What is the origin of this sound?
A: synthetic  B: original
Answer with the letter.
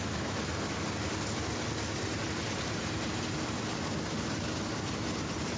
B